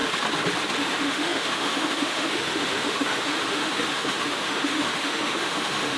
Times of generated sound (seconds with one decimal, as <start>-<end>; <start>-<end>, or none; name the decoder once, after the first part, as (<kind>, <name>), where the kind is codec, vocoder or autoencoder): 0.8-6.0 (autoencoder, DAC-VAE)